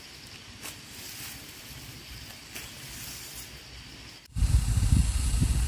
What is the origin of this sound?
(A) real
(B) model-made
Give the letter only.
A